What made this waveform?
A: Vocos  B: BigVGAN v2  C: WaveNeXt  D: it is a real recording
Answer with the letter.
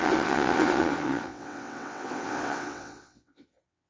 C